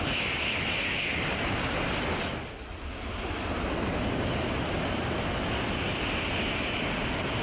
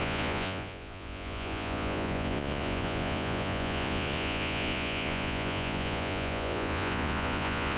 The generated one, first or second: second